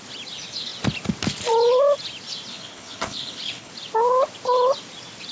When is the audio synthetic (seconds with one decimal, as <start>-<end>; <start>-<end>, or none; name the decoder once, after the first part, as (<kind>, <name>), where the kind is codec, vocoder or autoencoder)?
2.5-3.7 (codec, HILCodec)